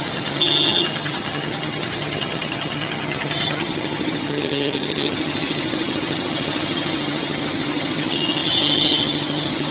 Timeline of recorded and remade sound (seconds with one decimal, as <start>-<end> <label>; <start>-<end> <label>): 0.0-9.7 remade